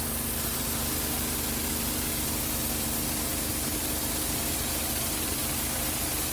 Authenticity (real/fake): real